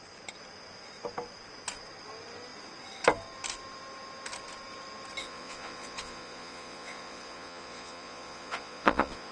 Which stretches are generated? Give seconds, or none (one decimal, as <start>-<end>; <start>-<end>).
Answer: 5.2-9.3